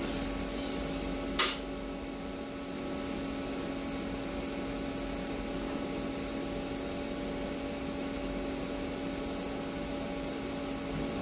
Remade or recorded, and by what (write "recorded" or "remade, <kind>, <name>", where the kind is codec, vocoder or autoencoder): recorded